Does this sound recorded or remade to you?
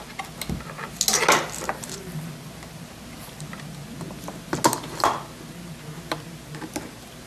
recorded